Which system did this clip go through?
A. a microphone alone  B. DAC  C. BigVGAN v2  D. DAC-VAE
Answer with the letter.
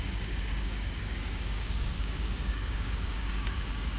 B